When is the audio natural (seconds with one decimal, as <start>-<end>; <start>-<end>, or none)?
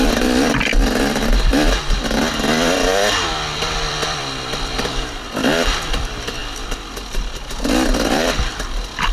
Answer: 0.7-3.6